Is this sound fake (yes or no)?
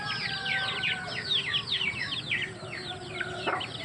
no